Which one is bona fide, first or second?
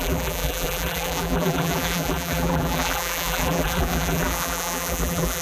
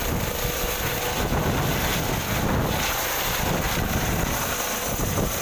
second